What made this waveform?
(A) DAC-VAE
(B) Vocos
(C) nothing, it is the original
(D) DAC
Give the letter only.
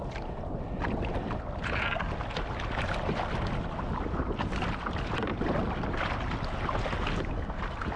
C